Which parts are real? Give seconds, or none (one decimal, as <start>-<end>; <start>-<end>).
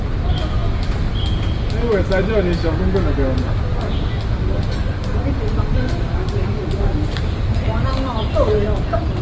0.0-9.2